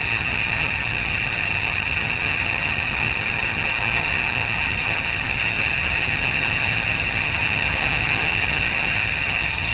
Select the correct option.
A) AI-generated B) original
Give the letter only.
A